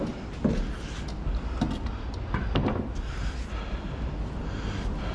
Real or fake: real